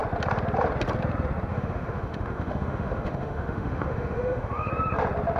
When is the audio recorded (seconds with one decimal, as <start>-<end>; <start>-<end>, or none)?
0.0-1.5; 4.7-5.4